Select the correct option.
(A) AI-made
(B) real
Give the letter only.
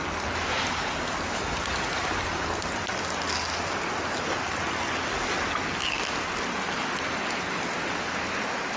B